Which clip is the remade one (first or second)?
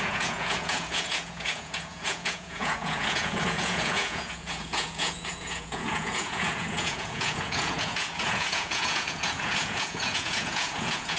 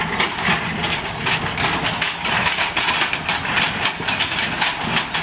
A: first